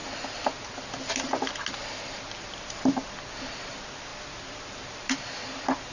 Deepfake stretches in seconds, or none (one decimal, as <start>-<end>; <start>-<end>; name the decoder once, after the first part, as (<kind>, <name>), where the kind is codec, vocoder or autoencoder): none